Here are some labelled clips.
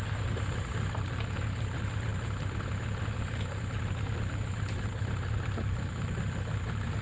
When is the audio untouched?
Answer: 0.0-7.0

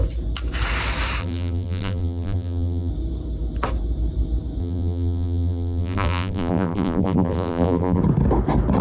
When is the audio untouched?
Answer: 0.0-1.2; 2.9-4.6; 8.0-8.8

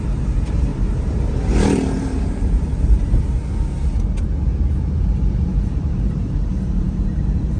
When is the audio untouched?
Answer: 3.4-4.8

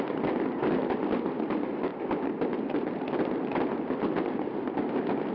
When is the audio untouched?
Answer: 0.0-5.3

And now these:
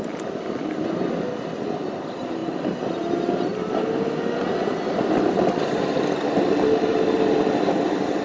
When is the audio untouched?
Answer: 0.0-8.2